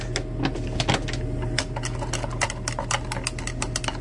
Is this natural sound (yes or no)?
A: yes